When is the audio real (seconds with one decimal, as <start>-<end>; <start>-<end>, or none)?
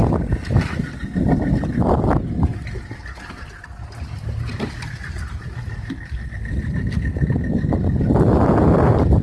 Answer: 0.0-9.2